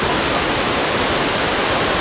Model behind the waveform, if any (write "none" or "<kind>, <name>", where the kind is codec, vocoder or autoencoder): none